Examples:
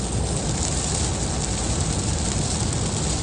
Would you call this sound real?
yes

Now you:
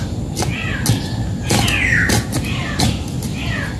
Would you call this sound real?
yes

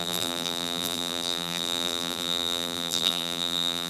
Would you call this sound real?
no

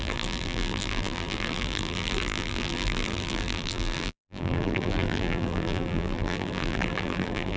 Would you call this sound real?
no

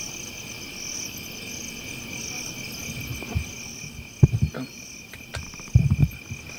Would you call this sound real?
yes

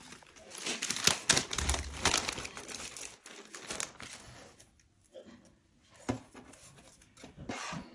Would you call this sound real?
yes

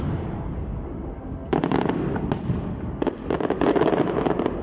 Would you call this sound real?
yes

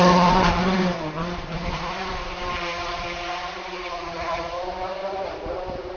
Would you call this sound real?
no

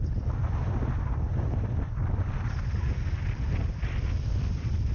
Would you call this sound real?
no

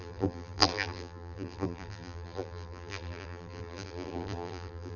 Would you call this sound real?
no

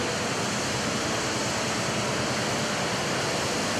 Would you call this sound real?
yes